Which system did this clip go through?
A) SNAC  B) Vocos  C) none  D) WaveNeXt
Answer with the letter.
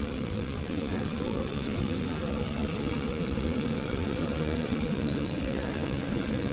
D